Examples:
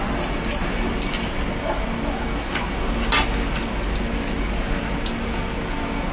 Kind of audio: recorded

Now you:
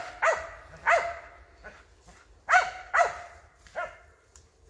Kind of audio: recorded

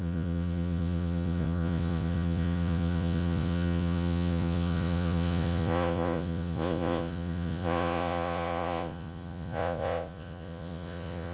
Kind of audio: remade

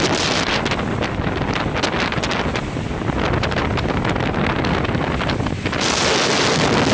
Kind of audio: recorded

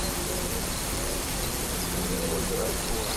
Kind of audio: remade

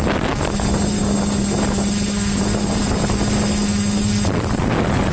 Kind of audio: recorded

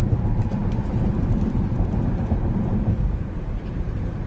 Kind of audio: remade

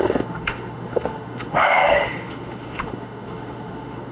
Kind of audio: remade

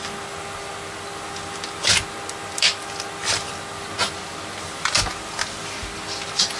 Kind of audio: recorded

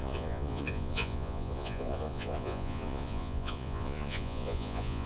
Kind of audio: remade